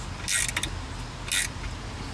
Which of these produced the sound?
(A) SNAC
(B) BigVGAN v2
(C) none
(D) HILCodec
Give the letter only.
C